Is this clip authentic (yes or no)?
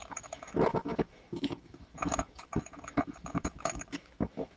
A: no